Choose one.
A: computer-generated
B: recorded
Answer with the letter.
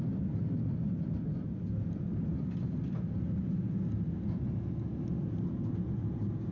B